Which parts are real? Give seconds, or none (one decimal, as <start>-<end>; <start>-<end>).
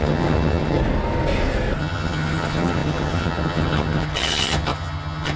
0.8-1.8